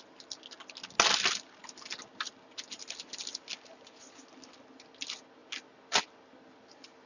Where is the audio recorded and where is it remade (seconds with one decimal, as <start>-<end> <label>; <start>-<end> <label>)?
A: 0.0-7.1 recorded